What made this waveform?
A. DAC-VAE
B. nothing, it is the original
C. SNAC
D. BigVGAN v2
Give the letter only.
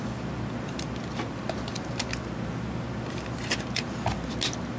B